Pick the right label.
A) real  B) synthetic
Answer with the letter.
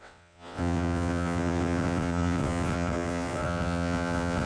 B